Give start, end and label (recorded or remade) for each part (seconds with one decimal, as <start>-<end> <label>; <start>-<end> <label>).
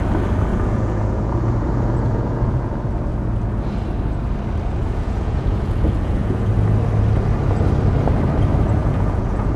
0.0-0.5 recorded; 0.5-2.7 remade; 2.7-4.8 recorded; 4.8-6.5 remade; 6.5-8.8 recorded; 8.8-9.6 remade